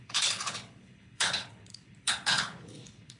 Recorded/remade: remade